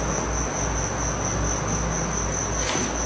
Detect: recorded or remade recorded